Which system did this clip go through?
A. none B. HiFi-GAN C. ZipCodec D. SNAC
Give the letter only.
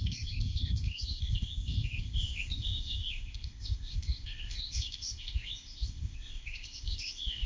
C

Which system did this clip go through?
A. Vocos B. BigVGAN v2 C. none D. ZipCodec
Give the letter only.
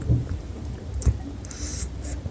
C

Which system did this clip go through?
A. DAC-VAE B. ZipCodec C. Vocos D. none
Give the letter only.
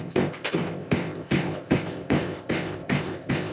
B